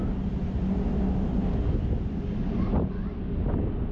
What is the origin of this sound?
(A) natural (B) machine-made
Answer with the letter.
A